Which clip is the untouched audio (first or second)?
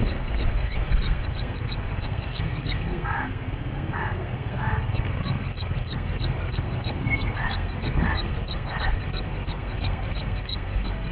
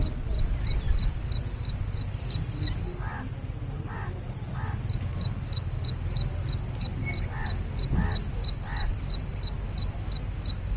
second